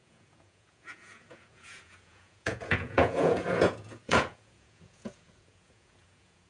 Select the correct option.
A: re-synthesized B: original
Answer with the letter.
A